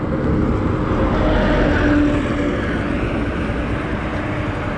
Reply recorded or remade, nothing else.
recorded